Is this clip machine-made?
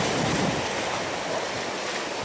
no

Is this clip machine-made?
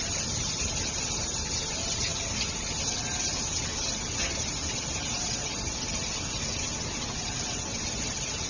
no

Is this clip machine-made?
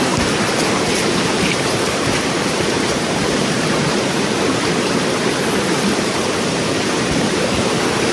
yes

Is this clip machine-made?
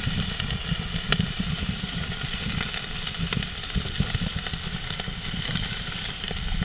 yes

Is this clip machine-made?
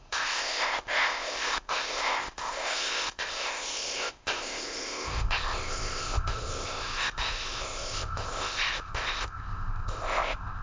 yes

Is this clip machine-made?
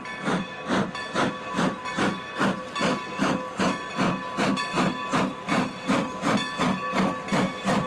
no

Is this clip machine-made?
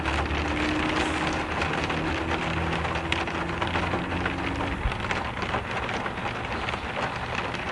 no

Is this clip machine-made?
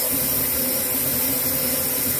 no